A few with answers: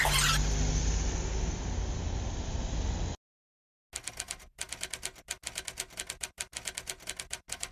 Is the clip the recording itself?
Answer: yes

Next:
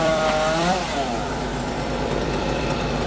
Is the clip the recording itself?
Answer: no